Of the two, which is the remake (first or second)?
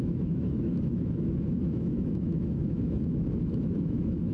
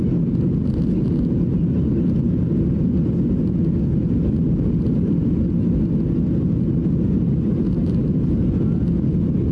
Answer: first